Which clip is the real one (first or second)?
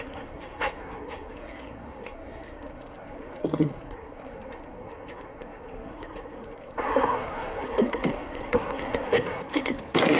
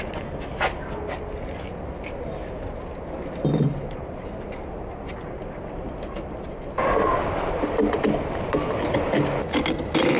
second